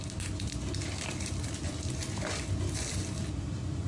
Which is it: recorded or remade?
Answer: remade